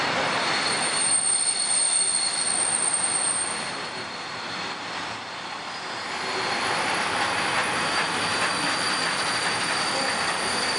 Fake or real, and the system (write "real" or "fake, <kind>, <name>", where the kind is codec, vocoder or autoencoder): real